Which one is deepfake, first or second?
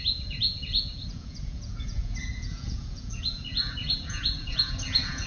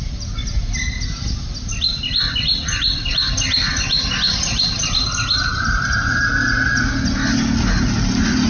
first